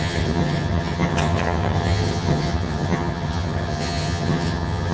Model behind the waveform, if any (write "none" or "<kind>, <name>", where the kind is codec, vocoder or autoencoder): vocoder, HiFi-GAN